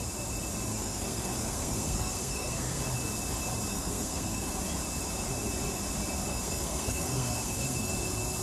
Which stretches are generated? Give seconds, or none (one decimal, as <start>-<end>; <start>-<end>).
0.7-2.8; 3.7-4.6; 6.3-7.9